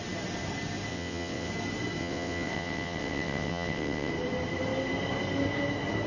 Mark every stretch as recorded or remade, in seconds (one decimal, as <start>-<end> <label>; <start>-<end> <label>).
0.0-0.9 recorded; 0.9-1.5 remade; 1.5-2.0 recorded; 2.0-4.1 remade; 4.1-6.1 recorded